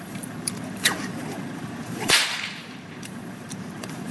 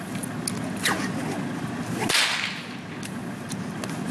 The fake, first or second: first